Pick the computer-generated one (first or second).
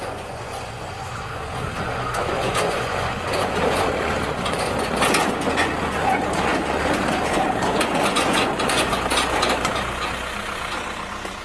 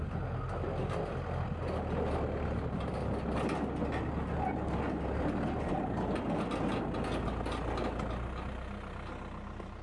first